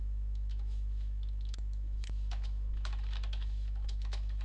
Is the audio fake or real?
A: fake